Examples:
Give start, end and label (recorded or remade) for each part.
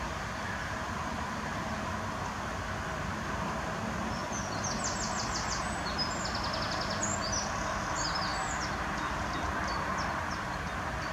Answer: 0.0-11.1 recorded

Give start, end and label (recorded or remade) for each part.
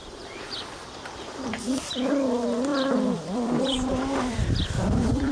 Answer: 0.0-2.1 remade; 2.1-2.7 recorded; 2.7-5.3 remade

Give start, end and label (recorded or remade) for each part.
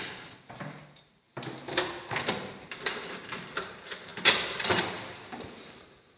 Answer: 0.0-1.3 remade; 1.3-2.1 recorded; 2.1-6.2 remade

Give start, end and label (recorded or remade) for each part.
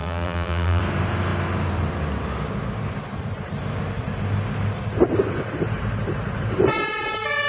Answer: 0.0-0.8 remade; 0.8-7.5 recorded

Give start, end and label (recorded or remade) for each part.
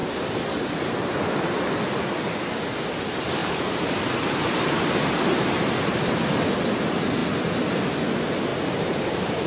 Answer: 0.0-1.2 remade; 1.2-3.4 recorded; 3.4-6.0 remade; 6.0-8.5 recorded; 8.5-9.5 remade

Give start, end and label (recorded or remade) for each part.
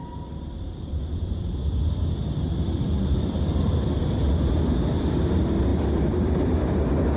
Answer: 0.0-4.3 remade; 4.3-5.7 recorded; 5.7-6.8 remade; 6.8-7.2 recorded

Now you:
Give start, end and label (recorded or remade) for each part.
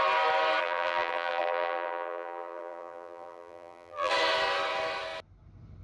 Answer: 0.0-0.6 recorded; 0.6-4.1 remade; 4.1-5.8 recorded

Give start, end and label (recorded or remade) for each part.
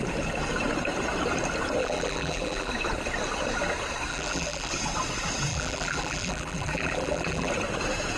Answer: 0.0-1.8 recorded; 1.8-2.7 remade; 2.7-4.1 recorded; 4.1-4.7 remade; 4.7-5.5 recorded; 5.5-7.5 remade; 7.5-8.2 recorded